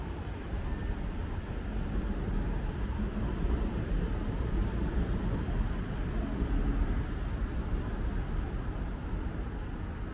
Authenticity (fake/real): real